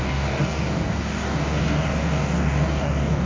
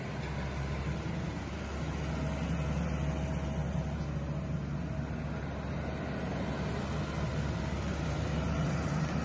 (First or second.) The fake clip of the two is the first